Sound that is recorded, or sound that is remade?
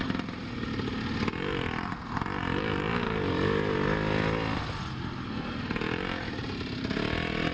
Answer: recorded